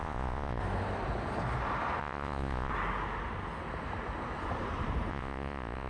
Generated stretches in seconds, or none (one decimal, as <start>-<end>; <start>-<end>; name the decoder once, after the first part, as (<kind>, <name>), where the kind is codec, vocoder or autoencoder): 0.0-0.6 (vocoder, Vocos); 2.0-2.7; 5.1-5.9